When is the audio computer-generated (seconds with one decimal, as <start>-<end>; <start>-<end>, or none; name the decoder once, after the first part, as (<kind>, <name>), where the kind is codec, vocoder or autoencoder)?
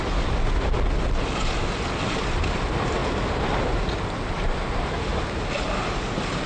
none